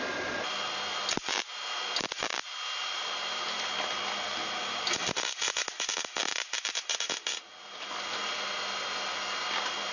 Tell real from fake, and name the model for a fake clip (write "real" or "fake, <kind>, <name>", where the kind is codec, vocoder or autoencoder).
real